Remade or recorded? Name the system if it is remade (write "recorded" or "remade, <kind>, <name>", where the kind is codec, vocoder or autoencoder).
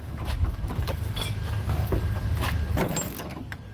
remade, codec, DAC